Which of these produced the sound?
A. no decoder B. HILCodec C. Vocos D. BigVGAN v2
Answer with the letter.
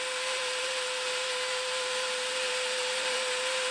D